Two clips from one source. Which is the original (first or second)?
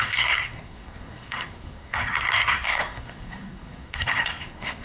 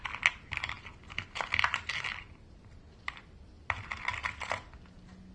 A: second